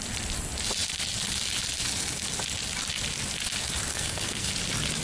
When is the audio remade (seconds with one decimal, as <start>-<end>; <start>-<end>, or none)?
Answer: 3.9-4.5